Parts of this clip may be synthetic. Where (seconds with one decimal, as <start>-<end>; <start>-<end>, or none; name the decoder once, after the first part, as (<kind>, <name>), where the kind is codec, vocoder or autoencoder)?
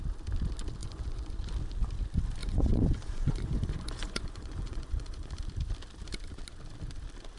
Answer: 0.8-1.3 (vocoder, Vocos); 2.4-5.4